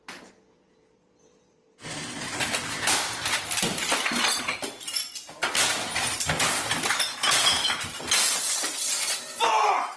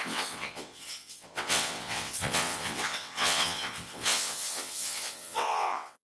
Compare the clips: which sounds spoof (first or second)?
second